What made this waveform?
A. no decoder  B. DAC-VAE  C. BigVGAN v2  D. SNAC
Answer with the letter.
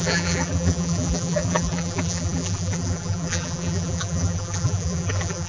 C